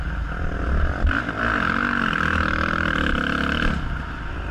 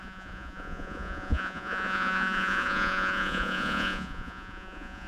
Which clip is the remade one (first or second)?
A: second